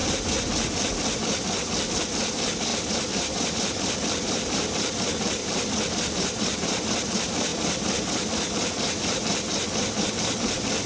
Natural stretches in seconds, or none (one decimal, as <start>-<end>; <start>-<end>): 0.0-1.9; 5.4-5.9; 7.5-10.0